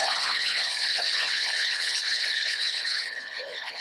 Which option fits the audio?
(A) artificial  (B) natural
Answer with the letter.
A